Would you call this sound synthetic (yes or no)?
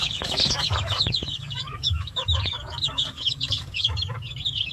yes